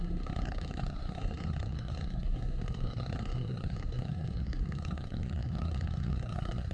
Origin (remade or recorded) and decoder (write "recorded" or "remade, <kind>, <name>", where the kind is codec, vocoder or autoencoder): remade, codec, SNAC